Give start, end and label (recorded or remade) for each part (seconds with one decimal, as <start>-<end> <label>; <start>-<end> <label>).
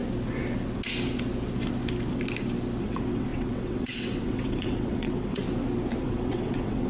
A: 0.0-2.8 recorded; 2.8-5.4 remade; 5.4-6.0 recorded; 6.0-6.9 remade